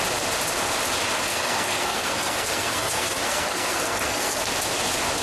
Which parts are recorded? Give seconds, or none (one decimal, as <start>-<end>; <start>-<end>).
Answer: 0.0-1.3; 4.4-5.2